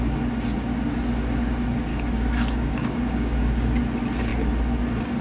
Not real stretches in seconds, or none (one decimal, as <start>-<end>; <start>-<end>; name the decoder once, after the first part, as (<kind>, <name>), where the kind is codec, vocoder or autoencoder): 1.9-3.8 (codec, DAC)